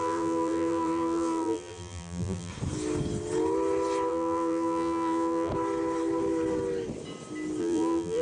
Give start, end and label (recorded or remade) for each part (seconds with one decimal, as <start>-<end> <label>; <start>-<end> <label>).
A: 0.0-2.5 remade; 2.5-4.1 recorded; 4.1-5.5 remade; 5.5-7.6 recorded; 7.6-8.2 remade